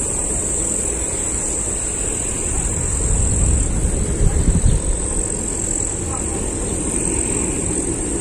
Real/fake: real